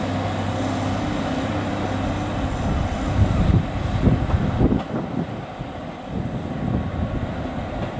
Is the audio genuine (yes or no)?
yes